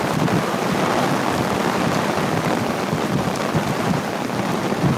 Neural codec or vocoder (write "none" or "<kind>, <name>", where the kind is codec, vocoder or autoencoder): vocoder, BigVGAN v2